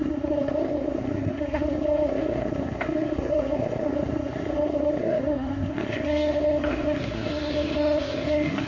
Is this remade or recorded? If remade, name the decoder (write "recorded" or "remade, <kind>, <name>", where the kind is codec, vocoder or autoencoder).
remade, codec, SNAC